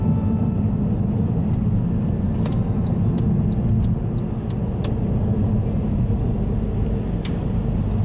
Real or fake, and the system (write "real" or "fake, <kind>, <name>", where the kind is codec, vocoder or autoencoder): real